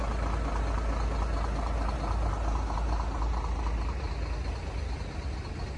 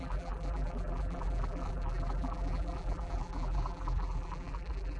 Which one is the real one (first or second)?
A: first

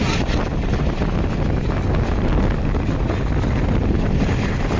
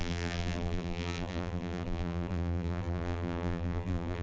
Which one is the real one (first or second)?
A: first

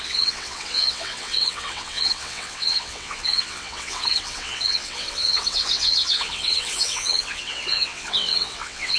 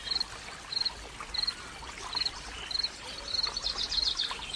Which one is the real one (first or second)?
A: second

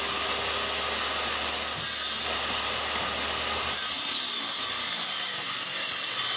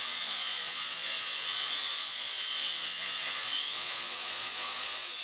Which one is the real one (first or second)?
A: first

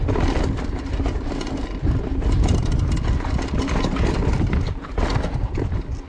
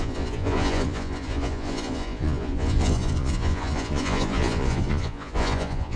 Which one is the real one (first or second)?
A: first